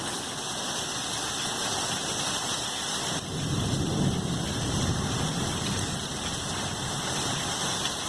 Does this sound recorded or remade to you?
remade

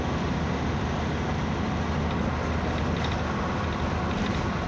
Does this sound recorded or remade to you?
recorded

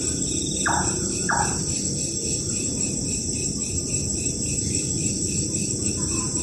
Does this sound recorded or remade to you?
remade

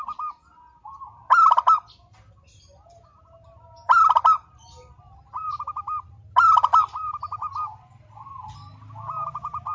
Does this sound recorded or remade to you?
recorded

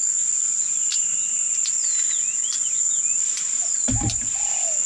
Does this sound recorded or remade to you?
recorded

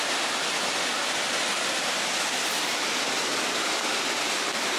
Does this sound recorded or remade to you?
remade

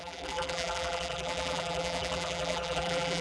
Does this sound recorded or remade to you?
remade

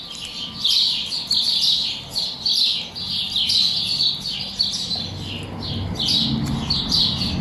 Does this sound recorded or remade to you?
recorded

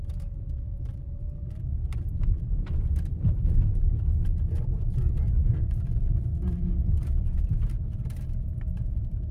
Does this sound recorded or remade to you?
remade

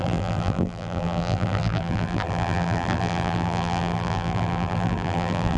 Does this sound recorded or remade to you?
remade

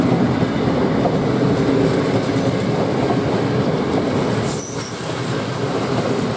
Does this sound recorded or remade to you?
recorded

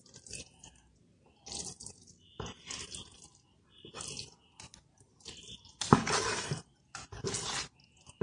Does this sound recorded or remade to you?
recorded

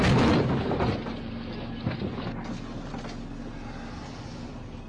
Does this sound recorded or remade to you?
recorded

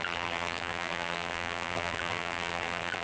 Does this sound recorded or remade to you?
remade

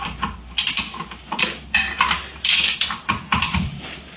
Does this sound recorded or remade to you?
recorded